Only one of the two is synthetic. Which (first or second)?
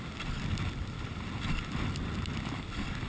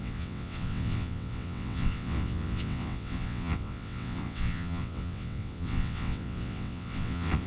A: second